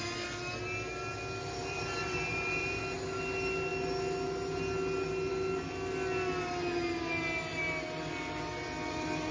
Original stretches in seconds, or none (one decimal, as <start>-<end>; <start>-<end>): 0.0-1.6; 2.8-9.3